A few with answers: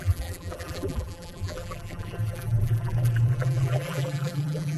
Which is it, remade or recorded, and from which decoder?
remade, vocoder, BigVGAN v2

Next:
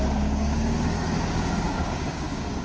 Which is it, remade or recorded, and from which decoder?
remade, codec, DAC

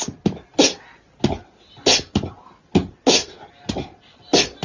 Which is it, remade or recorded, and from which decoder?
recorded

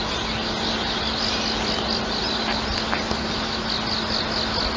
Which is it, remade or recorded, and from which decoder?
recorded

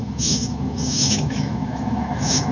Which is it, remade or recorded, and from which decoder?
remade, autoencoder, DAC-VAE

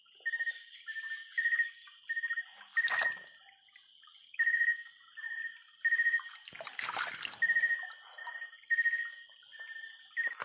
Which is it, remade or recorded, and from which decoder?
recorded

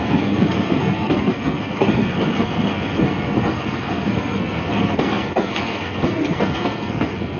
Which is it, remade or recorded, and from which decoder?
remade, codec, SNAC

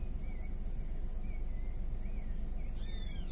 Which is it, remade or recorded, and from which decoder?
recorded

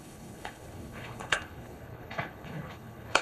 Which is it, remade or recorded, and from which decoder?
remade, codec, HILCodec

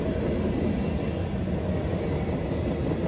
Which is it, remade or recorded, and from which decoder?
recorded